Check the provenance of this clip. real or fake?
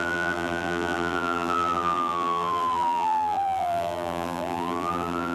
fake